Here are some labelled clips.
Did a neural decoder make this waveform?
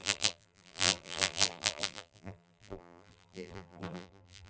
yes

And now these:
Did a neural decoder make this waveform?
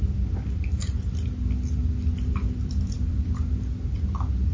no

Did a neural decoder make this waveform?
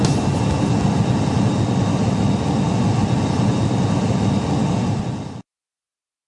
no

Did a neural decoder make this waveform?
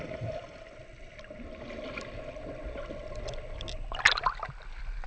no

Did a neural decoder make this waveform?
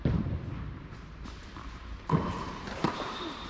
yes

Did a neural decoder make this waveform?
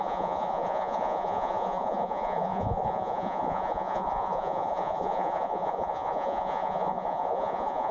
yes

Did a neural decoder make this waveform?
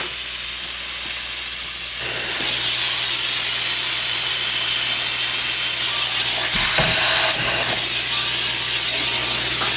no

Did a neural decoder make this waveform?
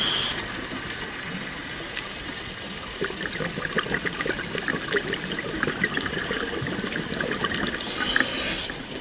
no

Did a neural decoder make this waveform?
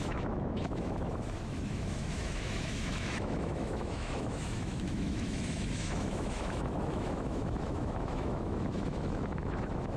yes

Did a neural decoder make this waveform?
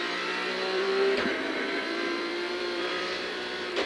yes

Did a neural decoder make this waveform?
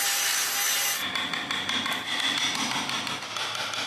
no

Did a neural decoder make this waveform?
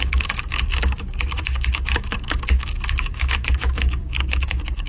yes